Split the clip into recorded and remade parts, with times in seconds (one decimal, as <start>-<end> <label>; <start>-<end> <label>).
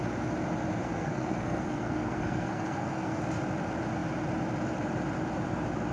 0.0-0.8 recorded; 0.8-3.2 remade; 3.2-5.9 recorded